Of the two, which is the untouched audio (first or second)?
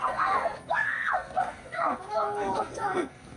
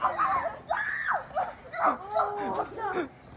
second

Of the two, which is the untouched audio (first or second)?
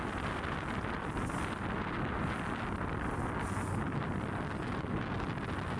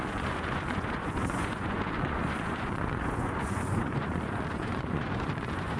first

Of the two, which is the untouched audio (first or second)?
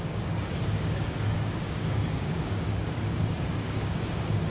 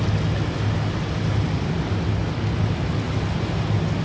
second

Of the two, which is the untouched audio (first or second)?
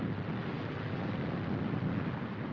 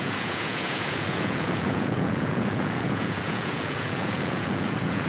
first